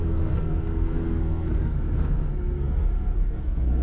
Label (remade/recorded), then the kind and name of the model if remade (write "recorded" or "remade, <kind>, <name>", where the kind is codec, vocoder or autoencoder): remade, codec, SNAC